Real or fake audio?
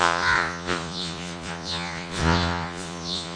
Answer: fake